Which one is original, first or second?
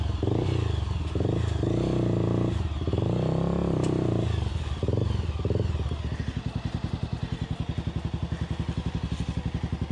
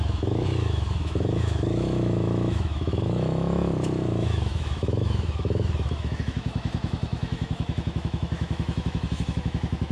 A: first